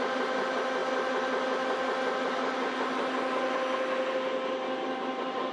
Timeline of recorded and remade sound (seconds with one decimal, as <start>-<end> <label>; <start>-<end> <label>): 0.0-5.5 recorded